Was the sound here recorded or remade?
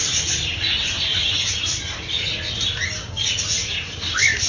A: recorded